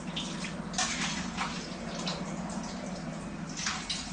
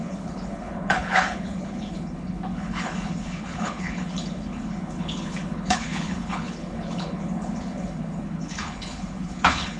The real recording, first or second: first